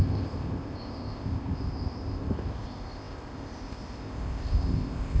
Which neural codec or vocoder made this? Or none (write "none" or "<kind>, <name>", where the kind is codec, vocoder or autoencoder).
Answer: codec, ZipCodec